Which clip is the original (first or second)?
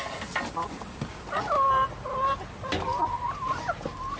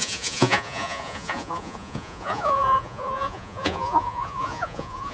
first